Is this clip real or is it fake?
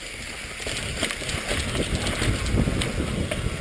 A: real